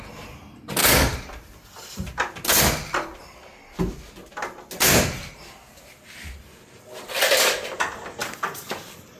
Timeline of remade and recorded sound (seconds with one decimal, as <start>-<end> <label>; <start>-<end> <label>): 0.0-9.2 recorded